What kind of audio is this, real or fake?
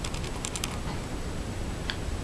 real